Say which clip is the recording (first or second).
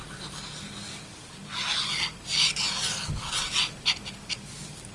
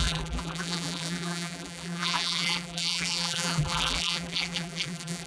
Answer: first